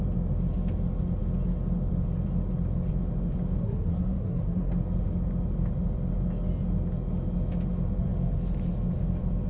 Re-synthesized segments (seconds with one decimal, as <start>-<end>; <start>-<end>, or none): 3.6-4.7